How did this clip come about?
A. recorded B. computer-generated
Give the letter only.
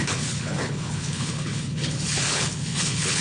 B